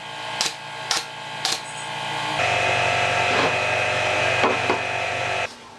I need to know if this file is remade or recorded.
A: recorded